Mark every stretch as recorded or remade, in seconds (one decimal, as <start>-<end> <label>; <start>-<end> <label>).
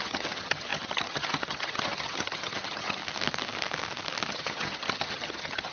0.0-3.0 remade; 3.0-4.3 recorded; 4.3-5.7 remade